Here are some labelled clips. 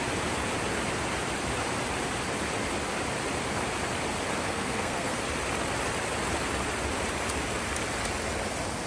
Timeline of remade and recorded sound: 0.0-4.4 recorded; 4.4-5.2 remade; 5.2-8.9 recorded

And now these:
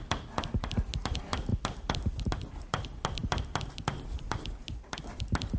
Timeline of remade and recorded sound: 0.0-5.6 recorded

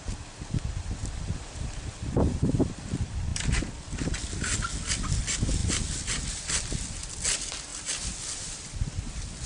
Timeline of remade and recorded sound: 0.0-1.0 recorded; 1.0-2.6 remade; 2.6-3.3 recorded; 3.3-4.1 remade; 4.1-5.6 recorded; 5.6-7.1 remade; 7.1-7.7 recorded; 7.7-9.0 remade; 9.0-9.5 recorded

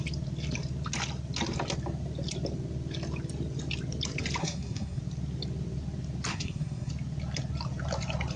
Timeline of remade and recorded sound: 0.0-4.4 recorded; 4.4-5.0 remade; 5.0-6.3 recorded; 6.3-6.9 remade; 6.9-8.4 recorded

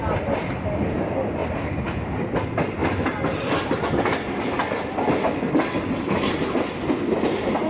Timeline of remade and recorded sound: 0.0-2.8 remade; 2.8-7.7 recorded

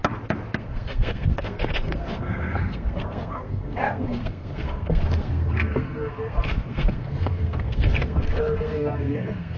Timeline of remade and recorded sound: 0.0-0.6 recorded; 0.6-9.6 remade